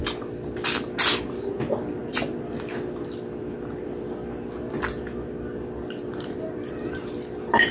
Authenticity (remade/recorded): recorded